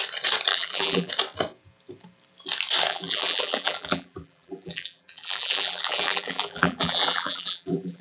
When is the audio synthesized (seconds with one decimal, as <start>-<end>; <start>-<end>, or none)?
0.5-1.1; 2.9-8.0